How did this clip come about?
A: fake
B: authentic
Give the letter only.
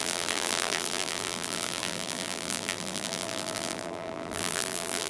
A